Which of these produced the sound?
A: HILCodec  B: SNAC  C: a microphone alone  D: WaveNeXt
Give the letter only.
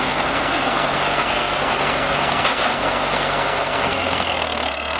B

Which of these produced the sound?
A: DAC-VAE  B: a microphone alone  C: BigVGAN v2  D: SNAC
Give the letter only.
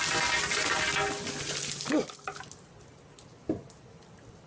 B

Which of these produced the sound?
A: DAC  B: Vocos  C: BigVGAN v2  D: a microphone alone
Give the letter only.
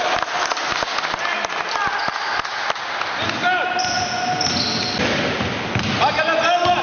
D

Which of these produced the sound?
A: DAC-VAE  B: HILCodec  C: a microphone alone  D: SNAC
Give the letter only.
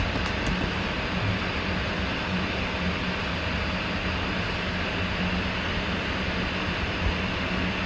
C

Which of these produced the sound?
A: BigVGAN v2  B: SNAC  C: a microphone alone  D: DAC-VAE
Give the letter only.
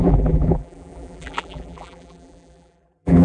A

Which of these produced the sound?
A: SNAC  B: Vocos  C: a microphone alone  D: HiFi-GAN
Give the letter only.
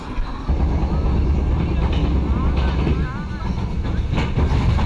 C